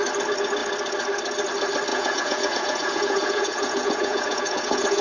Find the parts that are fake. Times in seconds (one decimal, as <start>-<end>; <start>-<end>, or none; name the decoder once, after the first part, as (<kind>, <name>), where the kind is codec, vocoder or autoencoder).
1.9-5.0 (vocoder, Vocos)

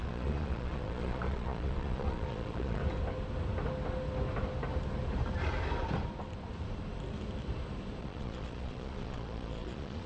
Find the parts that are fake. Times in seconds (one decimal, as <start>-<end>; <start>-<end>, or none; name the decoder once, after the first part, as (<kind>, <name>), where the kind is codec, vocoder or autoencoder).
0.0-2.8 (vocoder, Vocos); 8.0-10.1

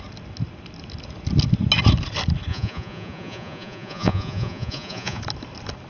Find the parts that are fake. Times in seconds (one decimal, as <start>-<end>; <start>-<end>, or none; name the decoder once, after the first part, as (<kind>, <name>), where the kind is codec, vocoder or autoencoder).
2.5-5.2 (vocoder, Vocos)

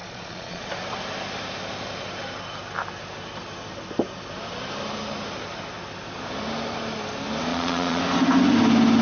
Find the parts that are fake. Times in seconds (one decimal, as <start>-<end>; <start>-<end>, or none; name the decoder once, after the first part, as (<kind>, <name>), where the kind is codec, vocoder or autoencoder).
0.0-0.7 (vocoder, Vocos); 7.5-8.0